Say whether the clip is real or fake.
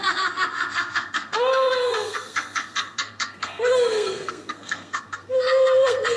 fake